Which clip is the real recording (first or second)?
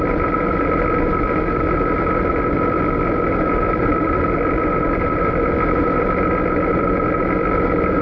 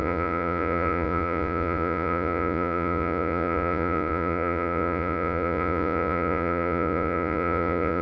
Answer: first